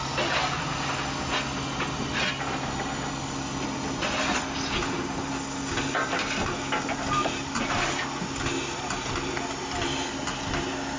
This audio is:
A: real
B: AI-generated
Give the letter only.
A